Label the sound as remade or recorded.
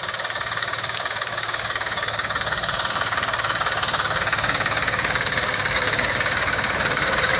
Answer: remade